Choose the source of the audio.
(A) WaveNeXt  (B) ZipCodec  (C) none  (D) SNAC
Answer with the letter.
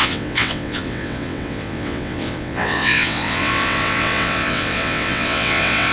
A